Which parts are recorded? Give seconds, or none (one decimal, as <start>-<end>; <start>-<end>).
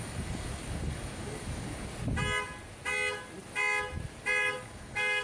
1.9-4.4